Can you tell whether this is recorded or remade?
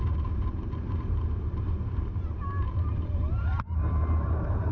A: remade